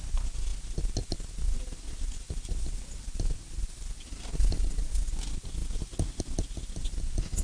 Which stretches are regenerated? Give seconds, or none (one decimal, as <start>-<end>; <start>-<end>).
none